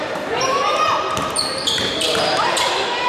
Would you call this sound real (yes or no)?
no